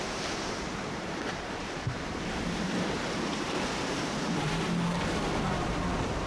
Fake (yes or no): yes